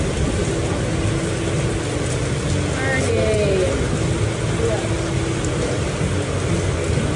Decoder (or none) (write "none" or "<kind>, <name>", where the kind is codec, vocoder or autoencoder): none